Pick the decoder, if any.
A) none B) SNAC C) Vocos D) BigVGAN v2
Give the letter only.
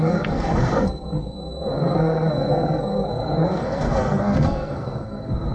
B